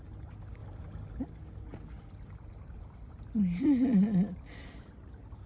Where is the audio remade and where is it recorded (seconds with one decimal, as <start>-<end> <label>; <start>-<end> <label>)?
0.0-0.6 recorded; 0.6-1.2 remade; 1.2-1.7 recorded; 1.7-5.0 remade; 5.0-5.5 recorded